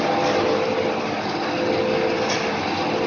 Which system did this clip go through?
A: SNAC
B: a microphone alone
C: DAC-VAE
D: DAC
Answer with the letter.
B